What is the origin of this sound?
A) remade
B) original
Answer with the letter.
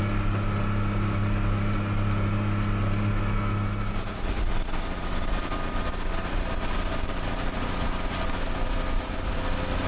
B